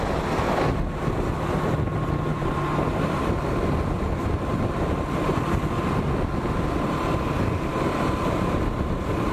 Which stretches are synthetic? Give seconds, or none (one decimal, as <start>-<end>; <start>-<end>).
2.3-3.5; 7.7-8.7